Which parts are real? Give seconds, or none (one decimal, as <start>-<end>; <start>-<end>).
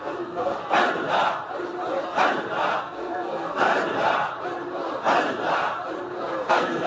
0.6-2.8; 3.7-6.5